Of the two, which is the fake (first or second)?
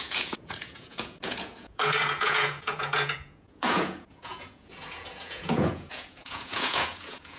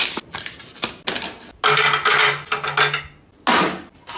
first